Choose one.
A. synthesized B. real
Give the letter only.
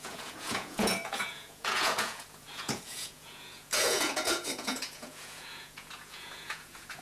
A